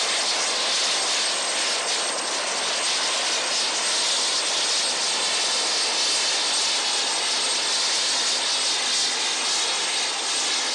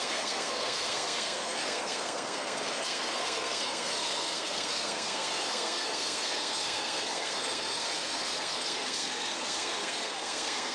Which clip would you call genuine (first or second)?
first